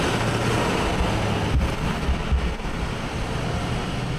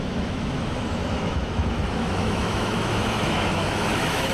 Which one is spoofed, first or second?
second